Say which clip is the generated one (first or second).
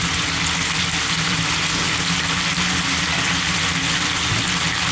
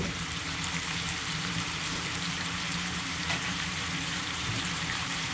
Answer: second